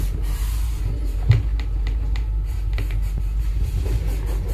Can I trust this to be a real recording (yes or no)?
no